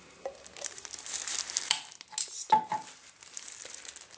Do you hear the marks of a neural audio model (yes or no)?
no